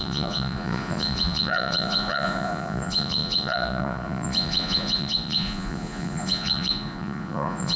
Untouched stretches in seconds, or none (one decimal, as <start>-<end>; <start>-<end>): none